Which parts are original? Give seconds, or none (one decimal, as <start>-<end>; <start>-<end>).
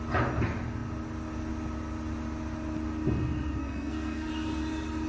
0.0-3.6; 4.3-5.1